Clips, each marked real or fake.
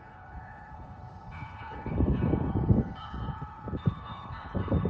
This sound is fake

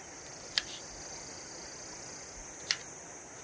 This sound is real